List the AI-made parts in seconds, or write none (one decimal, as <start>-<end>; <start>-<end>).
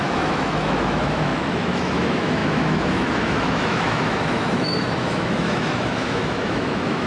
0.0-7.1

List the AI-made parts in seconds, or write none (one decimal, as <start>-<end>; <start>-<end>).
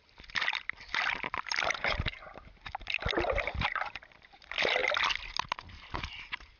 none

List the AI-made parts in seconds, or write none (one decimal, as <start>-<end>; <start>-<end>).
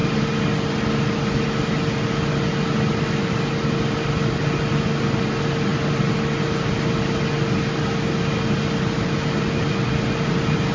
none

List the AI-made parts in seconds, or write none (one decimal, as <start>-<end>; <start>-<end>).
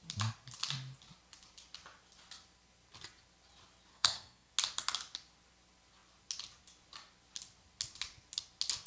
3.9-4.5